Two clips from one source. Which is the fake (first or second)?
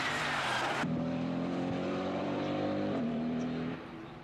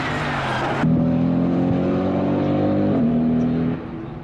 first